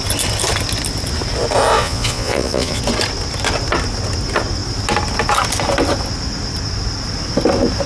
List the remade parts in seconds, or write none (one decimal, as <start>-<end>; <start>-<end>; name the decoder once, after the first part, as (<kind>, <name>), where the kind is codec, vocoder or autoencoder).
1.7-2.8 (vocoder, Vocos)